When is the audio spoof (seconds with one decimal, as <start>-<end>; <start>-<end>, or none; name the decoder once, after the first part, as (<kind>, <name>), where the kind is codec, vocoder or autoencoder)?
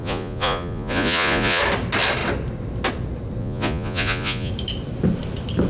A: 0.0-1.6 (vocoder, Vocos); 3.4-4.5